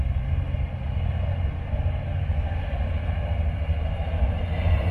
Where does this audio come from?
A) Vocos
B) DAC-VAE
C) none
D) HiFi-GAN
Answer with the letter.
C